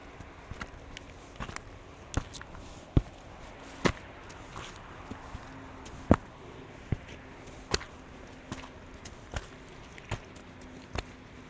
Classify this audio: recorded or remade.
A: recorded